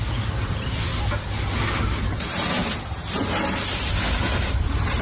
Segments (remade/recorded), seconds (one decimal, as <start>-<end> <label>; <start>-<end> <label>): 0.0-0.9 remade; 0.9-2.0 recorded; 2.0-2.7 remade; 2.7-3.6 recorded; 3.6-5.0 remade